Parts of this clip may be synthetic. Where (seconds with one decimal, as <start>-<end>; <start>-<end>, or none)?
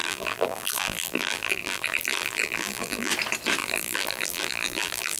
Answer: 0.0-3.1; 3.6-5.2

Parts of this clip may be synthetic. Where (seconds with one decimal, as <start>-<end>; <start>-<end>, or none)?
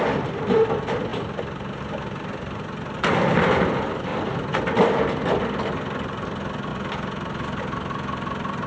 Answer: 4.1-5.4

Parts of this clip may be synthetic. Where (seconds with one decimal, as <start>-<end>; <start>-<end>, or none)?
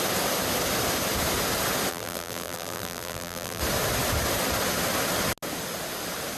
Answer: 1.9-3.6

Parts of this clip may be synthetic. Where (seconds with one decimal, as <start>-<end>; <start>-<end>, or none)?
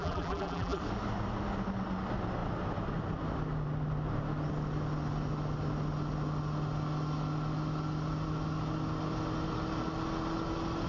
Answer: 0.0-0.8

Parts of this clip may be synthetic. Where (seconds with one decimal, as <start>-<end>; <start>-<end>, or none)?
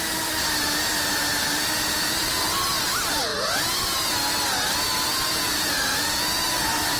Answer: none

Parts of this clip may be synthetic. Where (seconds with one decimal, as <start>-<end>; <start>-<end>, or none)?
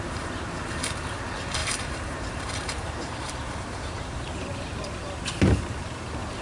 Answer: 0.0-6.4